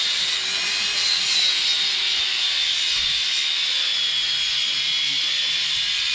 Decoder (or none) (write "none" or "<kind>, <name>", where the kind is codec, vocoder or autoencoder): none